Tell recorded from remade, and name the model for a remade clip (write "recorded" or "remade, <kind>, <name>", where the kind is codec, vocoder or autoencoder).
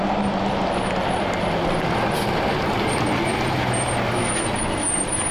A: recorded